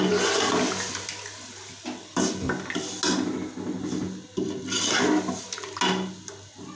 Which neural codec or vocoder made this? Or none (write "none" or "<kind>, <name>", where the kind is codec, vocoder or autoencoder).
none